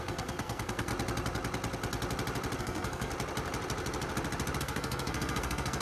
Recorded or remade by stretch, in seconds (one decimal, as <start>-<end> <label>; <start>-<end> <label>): 0.0-0.9 remade; 0.9-2.6 recorded; 2.6-3.1 remade; 3.1-4.6 recorded; 4.6-5.8 remade